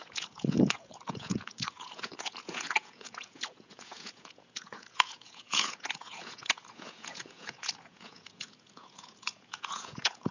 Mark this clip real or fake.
fake